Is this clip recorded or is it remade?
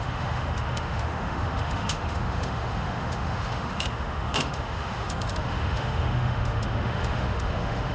remade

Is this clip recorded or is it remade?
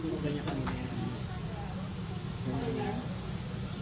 recorded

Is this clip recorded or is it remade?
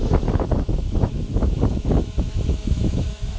remade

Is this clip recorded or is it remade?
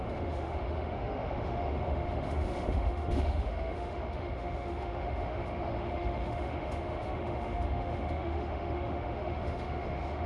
remade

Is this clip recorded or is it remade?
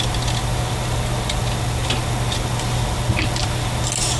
recorded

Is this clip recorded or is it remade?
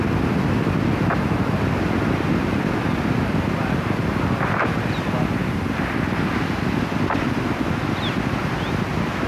recorded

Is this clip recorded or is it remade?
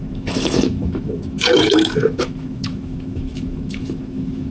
remade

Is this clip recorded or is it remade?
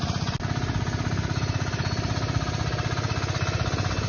recorded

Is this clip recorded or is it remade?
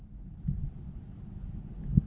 recorded